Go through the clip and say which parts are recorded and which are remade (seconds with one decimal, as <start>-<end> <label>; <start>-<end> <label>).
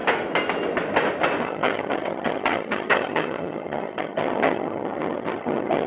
0.0-1.4 recorded; 1.4-5.9 remade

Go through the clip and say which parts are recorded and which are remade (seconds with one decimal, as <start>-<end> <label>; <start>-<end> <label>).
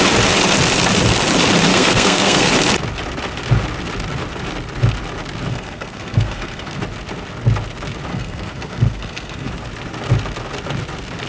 0.0-1.7 recorded; 1.7-2.5 remade; 2.5-5.5 recorded; 5.5-6.8 remade; 6.8-8.1 recorded; 8.1-9.5 remade; 9.5-11.3 recorded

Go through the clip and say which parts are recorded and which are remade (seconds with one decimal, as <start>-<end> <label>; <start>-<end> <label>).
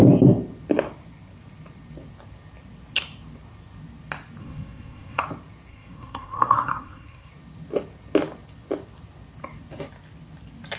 0.0-4.4 recorded; 4.4-5.2 remade; 5.2-5.7 recorded; 5.7-7.3 remade; 7.3-10.8 recorded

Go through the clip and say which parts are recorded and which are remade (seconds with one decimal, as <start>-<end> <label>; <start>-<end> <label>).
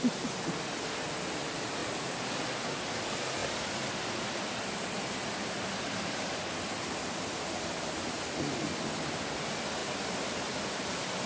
0.0-1.8 recorded; 1.8-2.8 remade; 2.8-3.4 recorded; 3.4-6.4 remade; 6.4-9.8 recorded; 9.8-11.3 remade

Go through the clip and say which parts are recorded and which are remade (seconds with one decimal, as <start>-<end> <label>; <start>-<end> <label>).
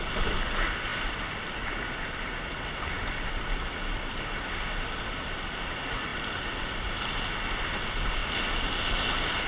0.0-9.5 recorded